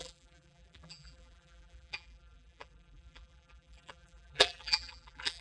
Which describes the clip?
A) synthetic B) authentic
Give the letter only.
A